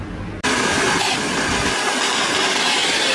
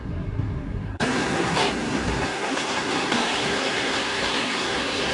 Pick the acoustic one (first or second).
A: first